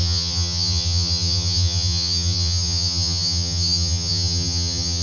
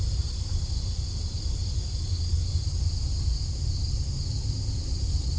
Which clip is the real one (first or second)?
second